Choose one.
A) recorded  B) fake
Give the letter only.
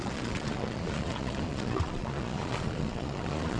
B